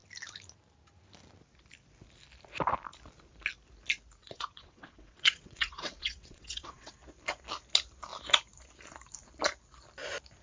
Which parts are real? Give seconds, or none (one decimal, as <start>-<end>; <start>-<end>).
0.0-4.2; 6.9-10.4